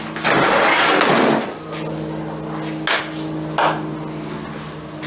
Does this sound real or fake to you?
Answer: real